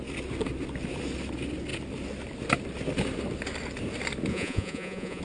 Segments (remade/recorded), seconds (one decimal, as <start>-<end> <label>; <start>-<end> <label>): 0.0-4.3 recorded; 4.3-5.2 remade